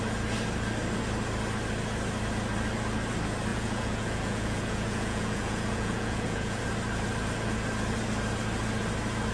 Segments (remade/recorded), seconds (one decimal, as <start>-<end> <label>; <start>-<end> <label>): 0.0-3.5 recorded; 3.5-6.6 remade; 6.6-9.3 recorded